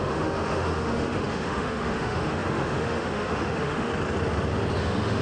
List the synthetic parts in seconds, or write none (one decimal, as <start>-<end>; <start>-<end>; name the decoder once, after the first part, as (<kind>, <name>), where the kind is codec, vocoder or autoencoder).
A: 0.0-3.9 (autoencoder, DAC-VAE); 4.8-5.2

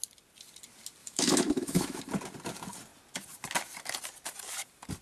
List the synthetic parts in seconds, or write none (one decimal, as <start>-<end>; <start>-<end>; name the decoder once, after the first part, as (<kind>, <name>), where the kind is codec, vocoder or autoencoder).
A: 1.0-2.0 (autoencoder, DAC-VAE)

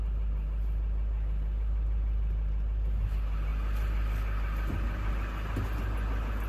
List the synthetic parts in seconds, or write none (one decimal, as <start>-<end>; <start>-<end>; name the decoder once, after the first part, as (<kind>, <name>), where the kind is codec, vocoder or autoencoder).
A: none

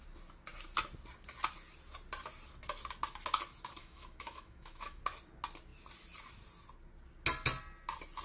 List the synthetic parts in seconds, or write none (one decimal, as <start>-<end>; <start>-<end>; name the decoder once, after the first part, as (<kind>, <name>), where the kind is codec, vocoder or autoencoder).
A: 3.8-5.0 (autoencoder, DAC-VAE)

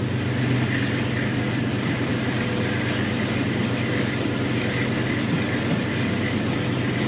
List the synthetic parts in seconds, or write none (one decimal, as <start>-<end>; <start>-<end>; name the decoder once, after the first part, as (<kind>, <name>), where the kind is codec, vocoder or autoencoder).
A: none

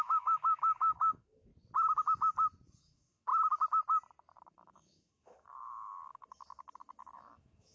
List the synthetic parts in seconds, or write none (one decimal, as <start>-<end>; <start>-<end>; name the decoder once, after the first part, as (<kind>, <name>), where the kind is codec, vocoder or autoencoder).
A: 0.0-1.5 (autoencoder, DAC-VAE); 2.8-3.3; 4.4-7.7